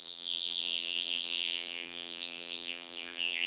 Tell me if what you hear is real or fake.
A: fake